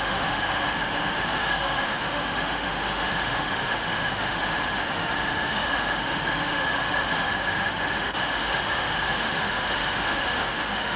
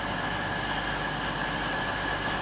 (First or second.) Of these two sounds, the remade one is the first